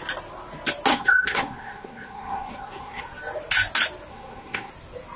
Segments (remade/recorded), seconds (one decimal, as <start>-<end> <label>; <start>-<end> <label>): 0.0-0.9 recorded; 0.9-3.0 remade; 3.0-4.1 recorded; 4.1-4.7 remade; 4.7-5.2 recorded